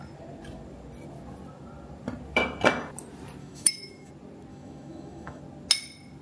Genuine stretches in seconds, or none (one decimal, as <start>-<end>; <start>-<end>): 0.0-3.4; 4.1-4.5; 5.4-6.2